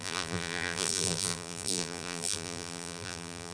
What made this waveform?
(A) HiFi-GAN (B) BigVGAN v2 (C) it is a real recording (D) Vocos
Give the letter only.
B